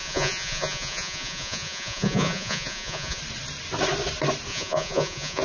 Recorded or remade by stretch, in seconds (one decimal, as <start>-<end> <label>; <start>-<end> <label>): 0.0-3.2 remade; 3.2-4.5 recorded; 4.5-5.4 remade